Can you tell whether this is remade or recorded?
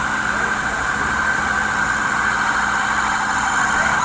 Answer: recorded